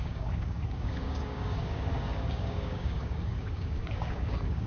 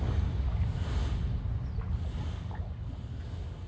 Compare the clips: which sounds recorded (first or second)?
second